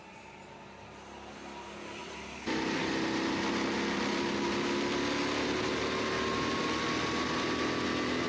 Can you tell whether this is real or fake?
real